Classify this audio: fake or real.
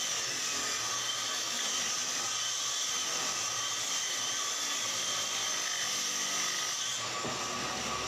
real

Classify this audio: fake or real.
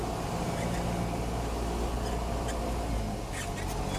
real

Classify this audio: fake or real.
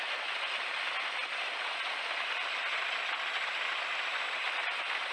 real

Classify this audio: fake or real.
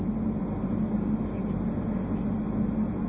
real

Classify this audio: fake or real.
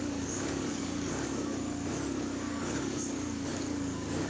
fake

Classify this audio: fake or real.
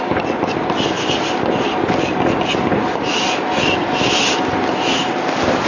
real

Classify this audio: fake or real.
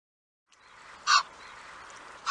real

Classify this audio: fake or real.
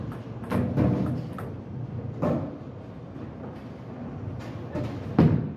real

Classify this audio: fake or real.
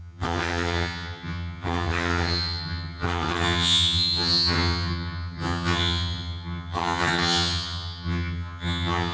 fake